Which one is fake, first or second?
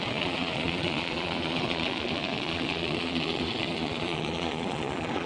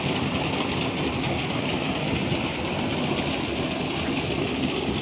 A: first